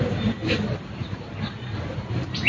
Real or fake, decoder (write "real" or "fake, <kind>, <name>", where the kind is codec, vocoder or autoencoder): real